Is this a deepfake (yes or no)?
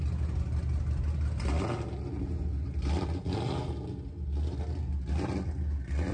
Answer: no